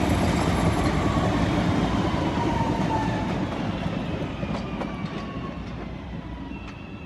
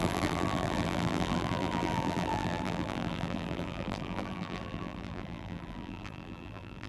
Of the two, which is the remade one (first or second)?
second